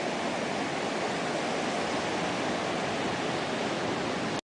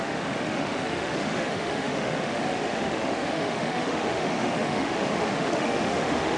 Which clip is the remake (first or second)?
second